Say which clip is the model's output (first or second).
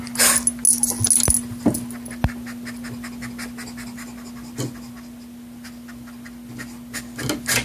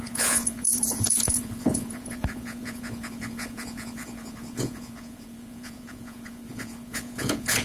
second